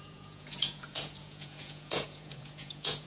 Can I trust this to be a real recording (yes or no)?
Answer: no